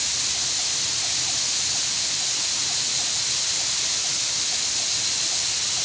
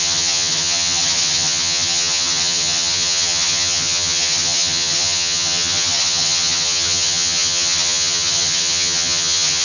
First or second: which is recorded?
first